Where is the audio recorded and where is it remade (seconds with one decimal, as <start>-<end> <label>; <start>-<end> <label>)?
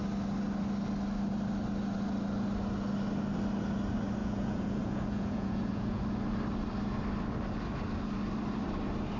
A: 0.0-4.2 recorded; 4.2-6.0 remade; 6.0-9.2 recorded